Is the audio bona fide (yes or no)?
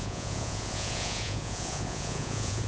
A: no